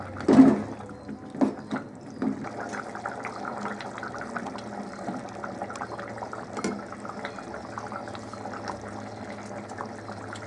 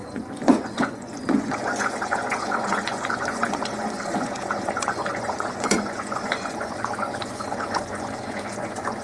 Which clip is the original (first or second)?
first